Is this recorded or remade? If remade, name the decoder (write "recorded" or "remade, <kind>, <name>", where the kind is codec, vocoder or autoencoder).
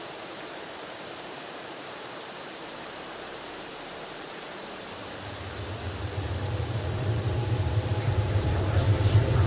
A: remade, vocoder, BigVGAN v2